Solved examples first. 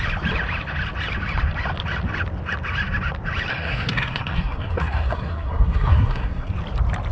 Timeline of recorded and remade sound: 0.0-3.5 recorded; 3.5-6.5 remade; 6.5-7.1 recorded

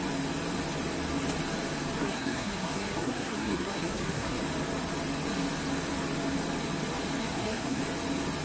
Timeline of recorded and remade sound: 0.0-2.0 recorded; 2.0-4.4 remade; 4.4-7.2 recorded; 7.2-7.8 remade; 7.8-8.4 recorded

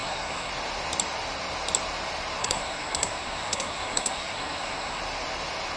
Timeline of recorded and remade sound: 0.0-0.5 remade; 0.5-2.4 recorded; 2.4-5.0 remade; 5.0-5.8 recorded

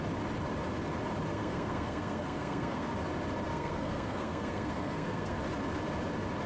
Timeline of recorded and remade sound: 0.0-1.3 recorded; 1.3-2.9 remade; 2.9-3.5 recorded; 3.5-5.4 remade; 5.4-6.5 recorded

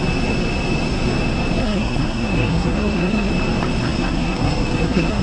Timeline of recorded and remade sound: 0.0-1.6 recorded; 1.6-3.3 remade; 3.3-3.8 recorded; 3.8-5.2 remade